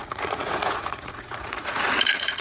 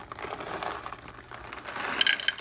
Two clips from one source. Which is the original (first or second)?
second